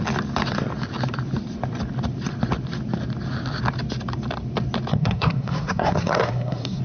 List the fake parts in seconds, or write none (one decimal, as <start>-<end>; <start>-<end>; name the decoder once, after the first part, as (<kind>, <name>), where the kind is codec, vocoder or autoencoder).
4.9-6.8 (codec, SNAC)